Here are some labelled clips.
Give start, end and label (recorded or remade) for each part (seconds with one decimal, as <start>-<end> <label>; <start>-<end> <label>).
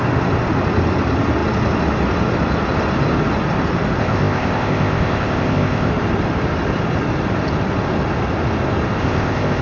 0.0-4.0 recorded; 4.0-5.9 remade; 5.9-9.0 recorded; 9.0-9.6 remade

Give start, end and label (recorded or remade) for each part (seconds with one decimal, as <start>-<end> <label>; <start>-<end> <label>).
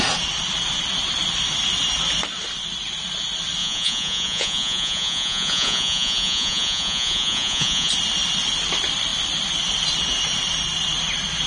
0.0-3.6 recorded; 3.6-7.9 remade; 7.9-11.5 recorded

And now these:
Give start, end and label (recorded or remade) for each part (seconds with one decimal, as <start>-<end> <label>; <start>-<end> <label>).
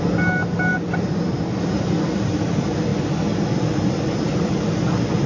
0.0-5.3 recorded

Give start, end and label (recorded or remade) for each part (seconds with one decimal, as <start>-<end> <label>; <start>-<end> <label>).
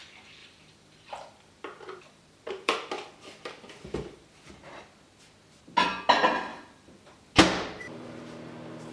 0.0-0.4 recorded; 0.4-4.5 remade; 4.5-6.5 recorded; 6.5-8.2 remade; 8.2-8.9 recorded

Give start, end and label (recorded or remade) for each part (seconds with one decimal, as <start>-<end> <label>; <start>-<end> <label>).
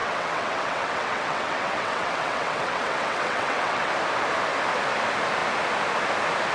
0.0-3.9 remade; 3.9-6.5 recorded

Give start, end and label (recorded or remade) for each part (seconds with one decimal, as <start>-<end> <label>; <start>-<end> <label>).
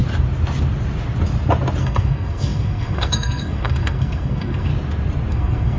0.0-1.8 recorded; 1.8-4.7 remade; 4.7-5.3 recorded; 5.3-5.8 remade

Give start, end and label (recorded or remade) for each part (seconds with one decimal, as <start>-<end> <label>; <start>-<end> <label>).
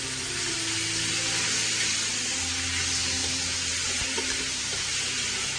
0.0-0.5 remade; 0.5-3.2 recorded; 3.2-5.6 remade